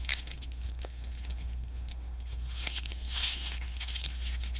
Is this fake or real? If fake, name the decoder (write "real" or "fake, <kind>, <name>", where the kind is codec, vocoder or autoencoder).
fake, codec, SNAC